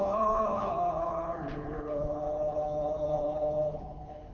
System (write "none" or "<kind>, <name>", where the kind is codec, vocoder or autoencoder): codec, HILCodec